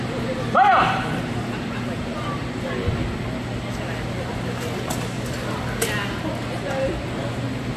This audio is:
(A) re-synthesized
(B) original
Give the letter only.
B